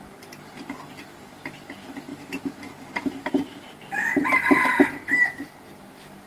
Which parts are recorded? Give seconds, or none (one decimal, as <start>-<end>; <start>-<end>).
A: 0.0-2.1; 5.2-6.3